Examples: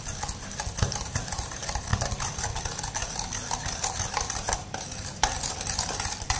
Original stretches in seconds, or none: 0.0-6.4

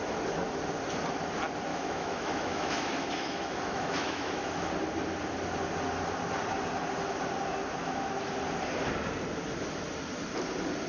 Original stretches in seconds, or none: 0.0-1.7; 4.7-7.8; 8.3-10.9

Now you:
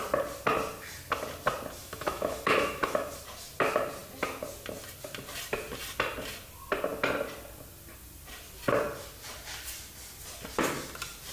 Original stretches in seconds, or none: 0.0-1.8; 3.2-11.3

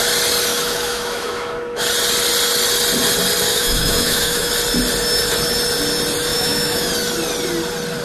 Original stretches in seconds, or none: 0.0-0.5; 1.8-3.5; 4.5-6.3; 6.9-8.0

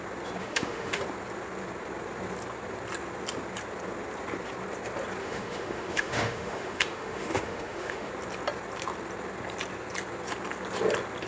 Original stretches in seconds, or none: 0.0-0.4; 1.0-5.2; 8.1-11.3